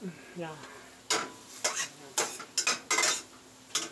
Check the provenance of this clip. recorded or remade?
recorded